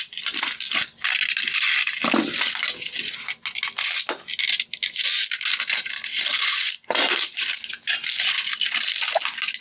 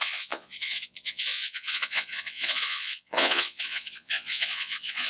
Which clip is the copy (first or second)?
second